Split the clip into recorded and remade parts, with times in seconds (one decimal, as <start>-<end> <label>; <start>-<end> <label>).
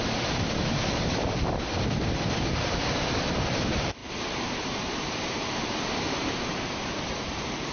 0.0-3.5 recorded; 3.5-7.7 remade